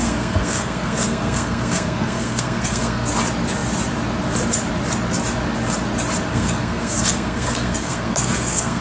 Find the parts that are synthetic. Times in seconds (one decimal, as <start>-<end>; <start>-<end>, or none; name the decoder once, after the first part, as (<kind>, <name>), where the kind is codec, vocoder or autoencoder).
0.0-3.1 (codec, SNAC); 6.3-8.8